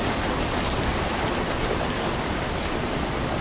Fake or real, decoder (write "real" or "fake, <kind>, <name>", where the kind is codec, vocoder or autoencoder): real